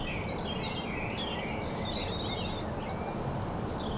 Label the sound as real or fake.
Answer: real